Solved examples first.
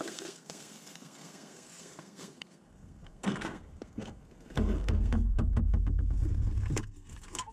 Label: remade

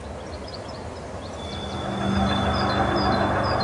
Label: recorded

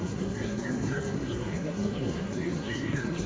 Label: remade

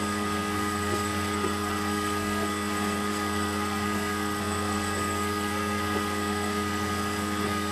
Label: remade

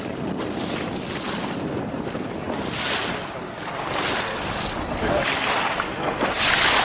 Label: recorded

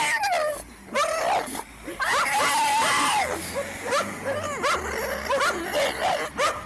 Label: recorded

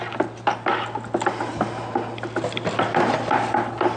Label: recorded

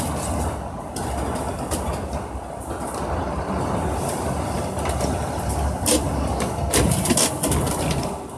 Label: recorded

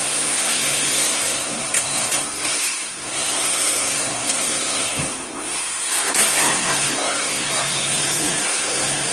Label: remade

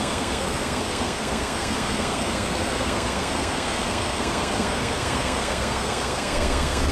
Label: remade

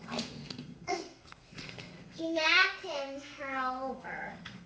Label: remade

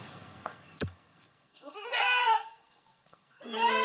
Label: remade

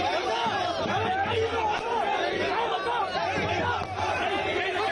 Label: recorded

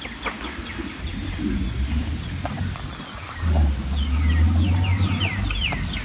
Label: recorded